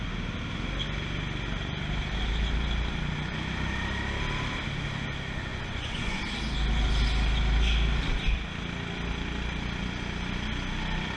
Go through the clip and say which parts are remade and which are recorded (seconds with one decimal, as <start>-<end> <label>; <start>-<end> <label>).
0.0-5.5 recorded; 5.5-6.2 remade; 6.2-11.2 recorded